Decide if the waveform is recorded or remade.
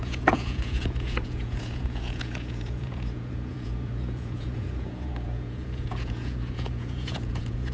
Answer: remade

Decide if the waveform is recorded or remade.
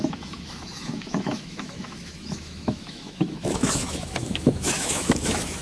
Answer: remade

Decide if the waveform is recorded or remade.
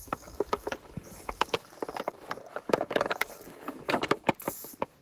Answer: remade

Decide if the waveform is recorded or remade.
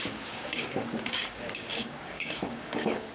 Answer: remade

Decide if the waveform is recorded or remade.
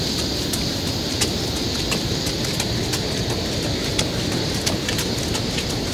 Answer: recorded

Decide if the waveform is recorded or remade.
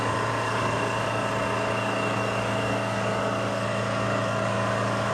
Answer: remade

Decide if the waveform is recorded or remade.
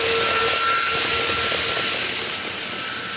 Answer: recorded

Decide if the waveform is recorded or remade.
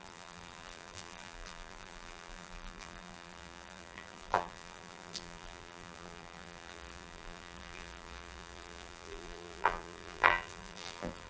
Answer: remade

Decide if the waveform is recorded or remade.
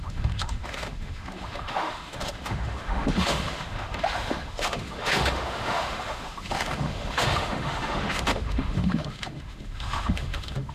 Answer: remade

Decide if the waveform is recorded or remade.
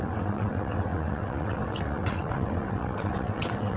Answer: remade